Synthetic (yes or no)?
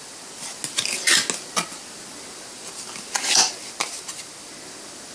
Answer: no